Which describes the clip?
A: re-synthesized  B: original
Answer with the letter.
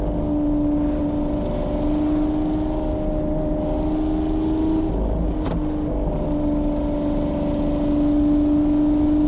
B